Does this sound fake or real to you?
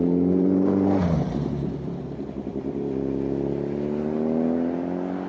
real